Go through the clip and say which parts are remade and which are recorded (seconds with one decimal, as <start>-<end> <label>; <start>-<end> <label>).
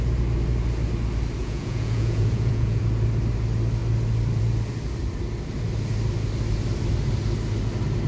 0.0-1.4 recorded; 1.4-2.8 remade; 2.8-8.1 recorded